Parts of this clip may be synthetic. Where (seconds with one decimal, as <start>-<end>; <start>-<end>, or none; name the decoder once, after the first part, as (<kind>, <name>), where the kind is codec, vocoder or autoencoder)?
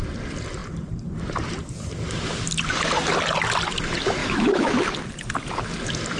4.2-4.7 (autoencoder, DAC-VAE)